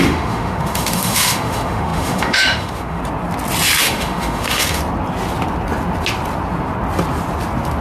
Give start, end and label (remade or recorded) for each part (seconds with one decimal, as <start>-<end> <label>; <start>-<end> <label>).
0.0-3.0 remade; 3.0-3.8 recorded; 3.8-4.8 remade; 4.8-7.8 recorded